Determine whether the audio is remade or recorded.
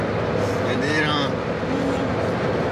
recorded